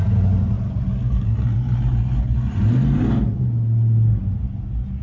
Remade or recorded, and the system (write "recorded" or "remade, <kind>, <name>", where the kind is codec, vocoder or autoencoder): recorded